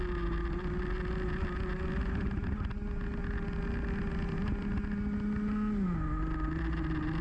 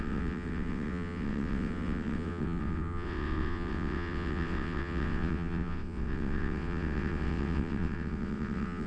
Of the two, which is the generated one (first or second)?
second